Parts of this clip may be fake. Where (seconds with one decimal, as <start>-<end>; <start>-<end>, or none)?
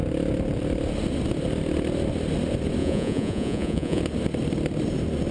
2.8-4.0